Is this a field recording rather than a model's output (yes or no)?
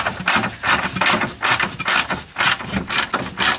yes